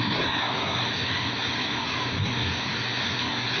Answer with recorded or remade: remade